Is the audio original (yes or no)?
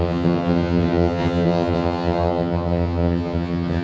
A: no